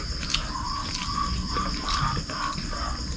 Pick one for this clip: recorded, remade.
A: recorded